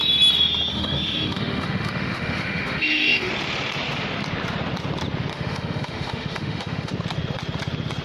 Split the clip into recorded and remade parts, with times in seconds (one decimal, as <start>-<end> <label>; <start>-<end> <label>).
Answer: 0.0-0.7 recorded; 0.7-3.3 remade; 3.3-5.3 recorded; 5.3-6.9 remade; 6.9-8.0 recorded